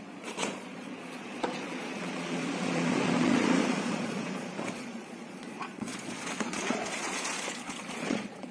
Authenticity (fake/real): fake